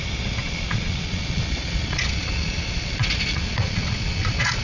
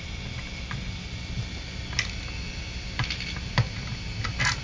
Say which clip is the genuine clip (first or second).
second